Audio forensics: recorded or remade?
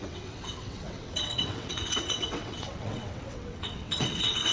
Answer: remade